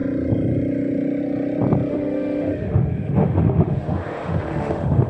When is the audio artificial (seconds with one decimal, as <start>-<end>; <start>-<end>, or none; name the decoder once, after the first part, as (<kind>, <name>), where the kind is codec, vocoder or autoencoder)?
1.9-5.1 (autoencoder, DAC-VAE)